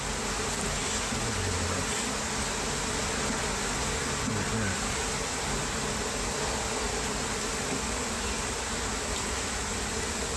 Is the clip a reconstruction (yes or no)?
no